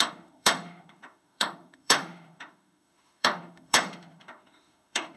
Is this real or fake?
fake